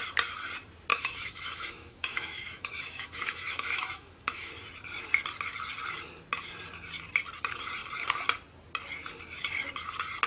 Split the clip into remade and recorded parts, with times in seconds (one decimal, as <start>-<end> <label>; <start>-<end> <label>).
0.0-0.9 recorded; 0.9-4.5 remade; 4.5-10.3 recorded